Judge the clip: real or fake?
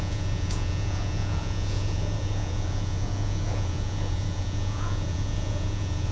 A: fake